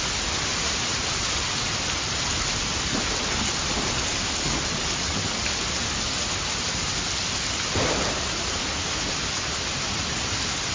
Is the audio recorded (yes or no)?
yes